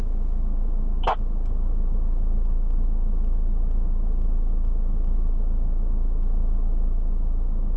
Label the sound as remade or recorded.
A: recorded